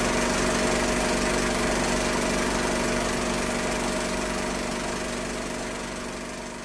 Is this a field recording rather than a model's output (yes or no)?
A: yes